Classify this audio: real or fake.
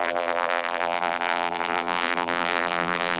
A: fake